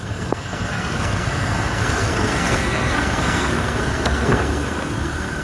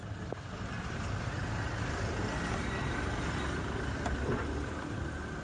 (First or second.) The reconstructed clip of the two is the first